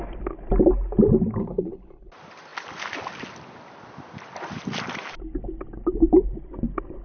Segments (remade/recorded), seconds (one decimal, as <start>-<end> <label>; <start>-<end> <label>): 0.0-1.4 recorded; 1.4-2.1 remade; 2.1-7.0 recorded